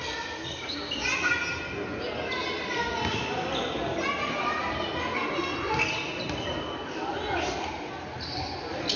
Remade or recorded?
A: recorded